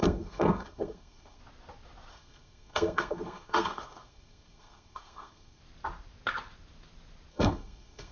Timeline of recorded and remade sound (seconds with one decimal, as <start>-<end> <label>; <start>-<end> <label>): 0.0-1.4 remade; 1.4-2.1 recorded; 2.1-5.6 remade; 5.6-7.3 recorded; 7.3-8.1 remade